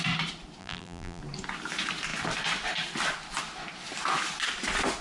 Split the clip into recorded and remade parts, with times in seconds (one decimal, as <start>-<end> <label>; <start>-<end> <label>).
0.0-0.6 recorded; 0.6-1.2 remade; 1.2-5.0 recorded